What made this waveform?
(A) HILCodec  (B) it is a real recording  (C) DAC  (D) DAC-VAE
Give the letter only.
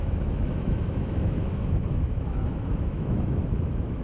D